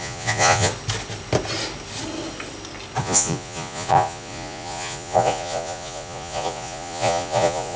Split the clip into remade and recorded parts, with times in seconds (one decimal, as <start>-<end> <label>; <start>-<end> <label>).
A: 0.0-0.7 remade; 0.7-3.0 recorded; 3.0-7.8 remade